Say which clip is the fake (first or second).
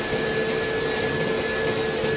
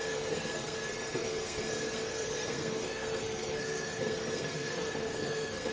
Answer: second